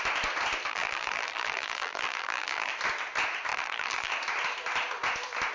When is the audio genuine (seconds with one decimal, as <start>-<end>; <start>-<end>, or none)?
0.0-0.7; 2.7-3.5; 4.1-5.5